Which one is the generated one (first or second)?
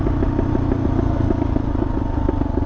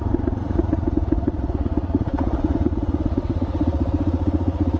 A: second